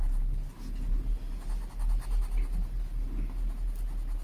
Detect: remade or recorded recorded